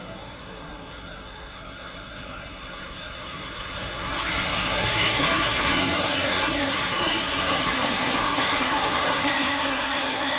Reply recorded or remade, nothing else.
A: remade